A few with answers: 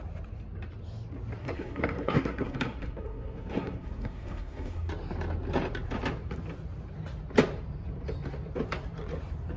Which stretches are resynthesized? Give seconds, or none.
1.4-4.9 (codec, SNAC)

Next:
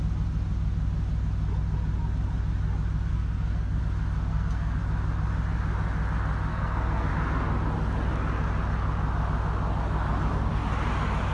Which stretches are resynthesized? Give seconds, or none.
3.1-3.8 (codec, SNAC); 4.3-4.8; 6.5-7.1

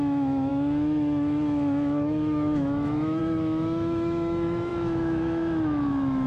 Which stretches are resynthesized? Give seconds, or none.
0.0-6.3 (autoencoder, DAC-VAE)

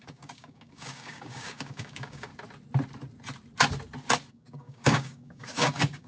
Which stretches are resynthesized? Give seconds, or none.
0.0-2.3 (codec, DAC); 4.3-6.1

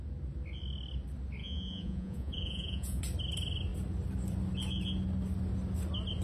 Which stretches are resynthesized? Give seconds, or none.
1.4-3.0 (vocoder, Vocos)